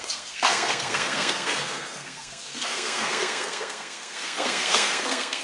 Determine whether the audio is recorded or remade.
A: remade